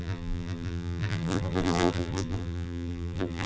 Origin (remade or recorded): remade